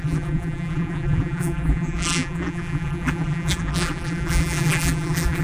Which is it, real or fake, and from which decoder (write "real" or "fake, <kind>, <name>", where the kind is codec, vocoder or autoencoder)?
fake, vocoder, BigVGAN v2